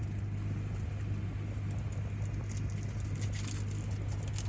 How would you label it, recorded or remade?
recorded